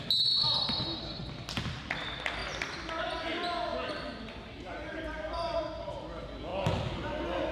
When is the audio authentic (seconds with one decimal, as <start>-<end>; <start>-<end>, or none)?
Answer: 0.0-2.4; 3.2-3.7; 5.6-7.5

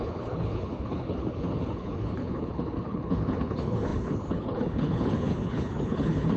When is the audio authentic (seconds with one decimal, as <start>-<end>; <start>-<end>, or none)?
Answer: none

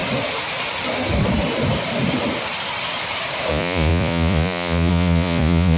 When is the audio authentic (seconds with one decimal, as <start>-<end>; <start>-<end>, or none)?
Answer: 0.0-3.5

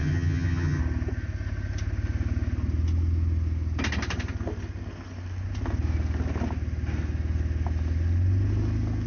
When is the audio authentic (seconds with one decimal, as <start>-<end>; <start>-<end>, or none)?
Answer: 0.8-9.1

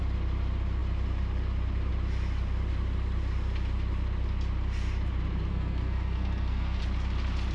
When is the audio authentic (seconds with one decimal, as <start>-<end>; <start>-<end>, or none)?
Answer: 0.0-5.5; 6.8-7.5

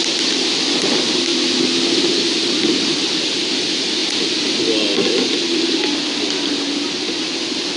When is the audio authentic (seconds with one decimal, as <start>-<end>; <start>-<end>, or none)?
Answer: 0.0-7.8

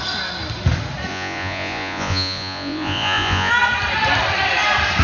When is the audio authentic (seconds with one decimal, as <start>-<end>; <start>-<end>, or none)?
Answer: 0.0-1.1; 3.5-5.0